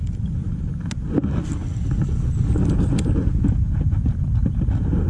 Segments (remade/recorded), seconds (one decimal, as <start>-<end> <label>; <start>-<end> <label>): 0.0-3.2 recorded; 3.2-5.1 remade